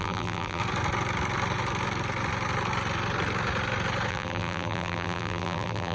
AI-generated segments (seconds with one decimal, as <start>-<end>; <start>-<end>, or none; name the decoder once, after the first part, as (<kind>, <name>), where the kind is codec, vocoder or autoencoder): 0.0-0.6 (vocoder, BigVGAN v2); 4.1-5.9

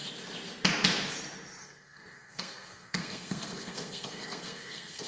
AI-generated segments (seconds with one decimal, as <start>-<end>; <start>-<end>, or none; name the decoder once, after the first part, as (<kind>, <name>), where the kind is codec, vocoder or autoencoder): 1.6-5.1 (codec, SNAC)

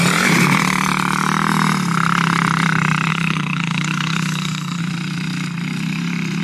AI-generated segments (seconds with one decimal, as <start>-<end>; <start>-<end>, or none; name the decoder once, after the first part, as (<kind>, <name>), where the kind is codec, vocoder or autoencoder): 3.1-4.8 (codec, SNAC)

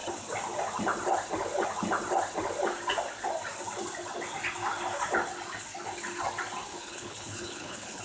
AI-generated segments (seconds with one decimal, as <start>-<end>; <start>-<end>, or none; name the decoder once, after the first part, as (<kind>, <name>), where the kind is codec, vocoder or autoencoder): 6.7-8.0 (codec, HILCodec)

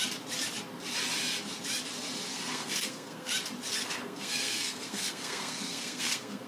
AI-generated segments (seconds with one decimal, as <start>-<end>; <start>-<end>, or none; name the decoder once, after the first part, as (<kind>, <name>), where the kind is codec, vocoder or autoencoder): 2.3-3.3 (codec, SNAC); 3.7-6.5

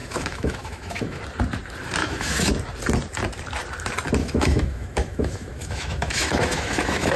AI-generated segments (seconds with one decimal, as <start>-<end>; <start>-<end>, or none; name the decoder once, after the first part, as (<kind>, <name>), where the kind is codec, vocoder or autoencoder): 0.0-1.2 (autoencoder, DAC-VAE); 2.0-2.5; 4.2-7.2

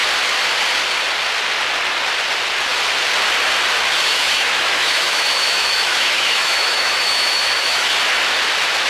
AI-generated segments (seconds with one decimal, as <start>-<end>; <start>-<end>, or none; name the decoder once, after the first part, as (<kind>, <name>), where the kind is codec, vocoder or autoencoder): 4.1-7.9 (autoencoder, DAC-VAE)